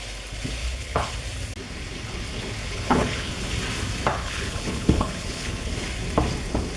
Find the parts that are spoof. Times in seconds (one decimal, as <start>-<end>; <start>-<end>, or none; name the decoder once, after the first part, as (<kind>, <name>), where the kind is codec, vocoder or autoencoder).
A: 0.6-1.1 (codec, HILCodec); 2.6-3.3; 4.2-5.7